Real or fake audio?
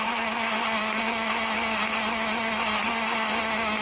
real